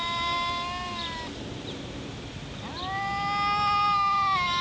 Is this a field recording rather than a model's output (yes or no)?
yes